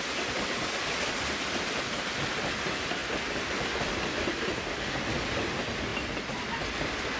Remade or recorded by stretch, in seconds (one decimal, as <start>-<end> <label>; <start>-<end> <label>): 0.0-7.2 recorded